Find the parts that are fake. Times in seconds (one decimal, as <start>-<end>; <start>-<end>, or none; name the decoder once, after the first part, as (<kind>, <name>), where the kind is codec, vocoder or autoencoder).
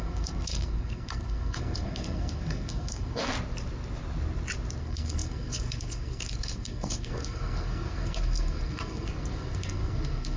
0.0-3.3 (codec, SNAC); 4.8-10.4